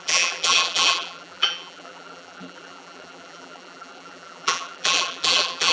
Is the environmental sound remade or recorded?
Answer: remade